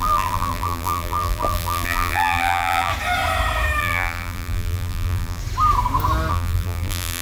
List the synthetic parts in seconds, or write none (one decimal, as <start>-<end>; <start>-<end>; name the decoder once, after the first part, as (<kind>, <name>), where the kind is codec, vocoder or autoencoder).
0.0-2.9 (vocoder, BigVGAN v2); 3.8-5.4; 6.3-7.2